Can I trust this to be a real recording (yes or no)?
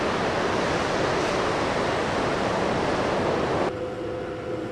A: yes